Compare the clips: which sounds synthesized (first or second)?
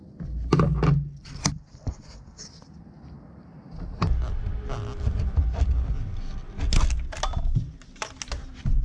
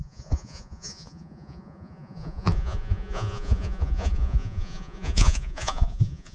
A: second